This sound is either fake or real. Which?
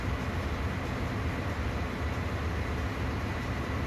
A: real